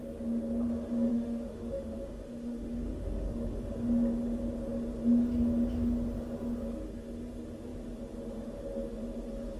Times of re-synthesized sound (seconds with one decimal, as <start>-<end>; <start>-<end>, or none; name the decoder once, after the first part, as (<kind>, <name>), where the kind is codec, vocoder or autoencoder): 1.1-3.6 (autoencoder, DAC-VAE)